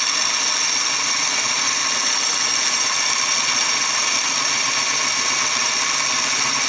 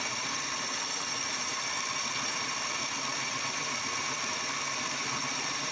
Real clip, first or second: first